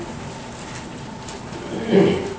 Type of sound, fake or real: real